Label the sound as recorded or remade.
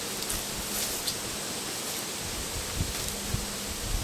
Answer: recorded